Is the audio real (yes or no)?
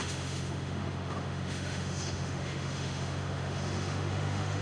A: no